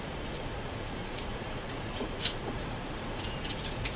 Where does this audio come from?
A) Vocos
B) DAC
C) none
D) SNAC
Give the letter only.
A